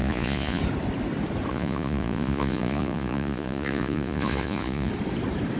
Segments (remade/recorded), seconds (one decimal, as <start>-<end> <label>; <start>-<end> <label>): 0.0-0.6 remade; 0.6-1.5 recorded; 1.5-4.9 remade; 4.9-5.6 recorded